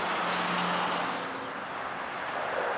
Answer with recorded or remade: recorded